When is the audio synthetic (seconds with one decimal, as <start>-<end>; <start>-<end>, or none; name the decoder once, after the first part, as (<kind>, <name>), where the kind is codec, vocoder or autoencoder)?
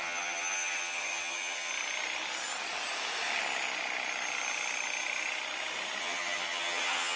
0.0-1.7 (vocoder, HiFi-GAN); 6.0-7.2